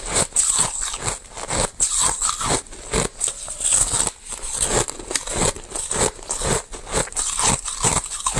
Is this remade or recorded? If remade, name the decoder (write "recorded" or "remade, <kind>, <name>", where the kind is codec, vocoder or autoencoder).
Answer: recorded